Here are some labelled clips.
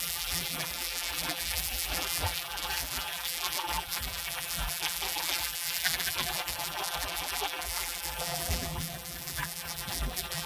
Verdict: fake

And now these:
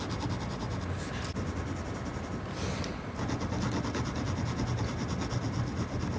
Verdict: real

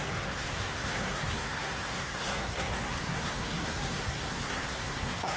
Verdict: fake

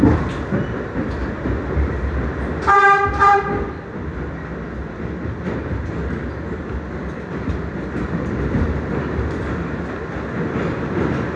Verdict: real